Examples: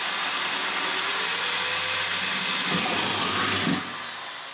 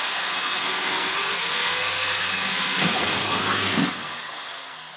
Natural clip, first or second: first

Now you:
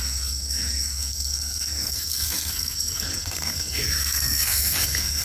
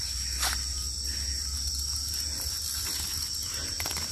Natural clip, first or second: second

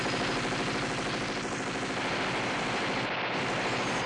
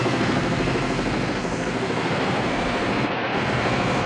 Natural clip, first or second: first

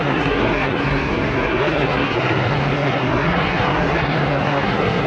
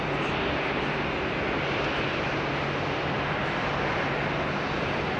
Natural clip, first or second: second